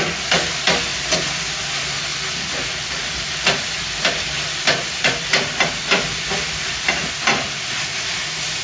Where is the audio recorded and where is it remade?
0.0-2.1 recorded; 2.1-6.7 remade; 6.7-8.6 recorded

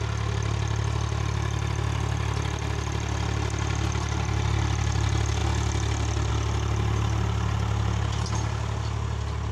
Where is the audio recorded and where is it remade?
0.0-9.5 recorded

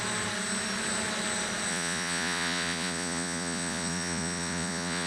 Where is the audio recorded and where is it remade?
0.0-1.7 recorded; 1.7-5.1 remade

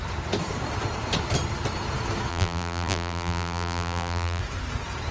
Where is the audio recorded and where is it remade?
0.0-2.3 recorded; 2.3-4.4 remade; 4.4-5.1 recorded

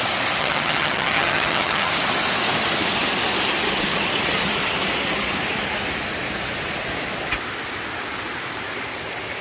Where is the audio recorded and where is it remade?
0.0-0.4 recorded; 0.4-1.9 remade; 1.9-9.4 recorded

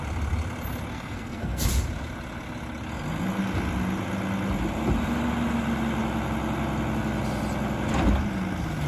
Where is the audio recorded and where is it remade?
0.0-0.9 recorded; 0.9-1.7 remade; 1.7-8.9 recorded